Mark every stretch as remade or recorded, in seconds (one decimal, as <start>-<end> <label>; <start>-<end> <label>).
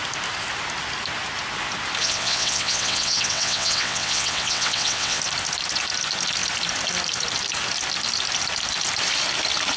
0.0-2.0 recorded; 2.0-5.2 remade; 5.2-9.8 recorded